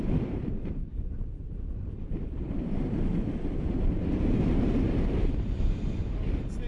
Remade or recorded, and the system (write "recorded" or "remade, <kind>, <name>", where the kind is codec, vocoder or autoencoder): remade, vocoder, BigVGAN v2